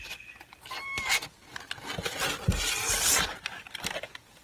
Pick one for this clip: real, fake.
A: real